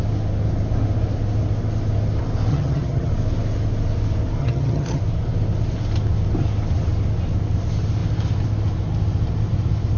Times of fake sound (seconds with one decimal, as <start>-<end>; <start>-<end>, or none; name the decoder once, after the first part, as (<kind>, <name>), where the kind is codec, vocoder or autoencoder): 2.5-3.1 (vocoder, HiFi-GAN); 4.4-5.0